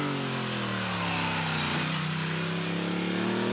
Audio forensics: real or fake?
real